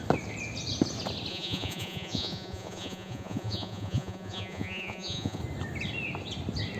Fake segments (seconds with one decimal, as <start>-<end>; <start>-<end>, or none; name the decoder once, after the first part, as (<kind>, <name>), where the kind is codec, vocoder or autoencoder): 1.3-5.4 (vocoder, Vocos)